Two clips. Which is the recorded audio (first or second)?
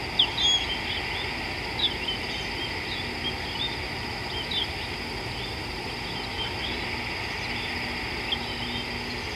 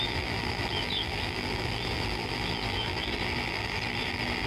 first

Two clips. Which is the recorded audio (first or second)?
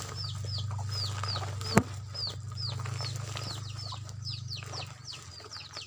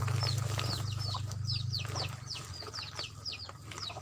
first